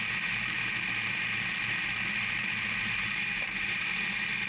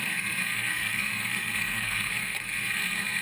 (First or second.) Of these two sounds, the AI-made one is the second